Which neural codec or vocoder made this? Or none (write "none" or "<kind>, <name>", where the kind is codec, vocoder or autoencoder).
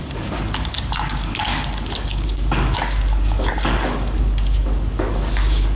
codec, DAC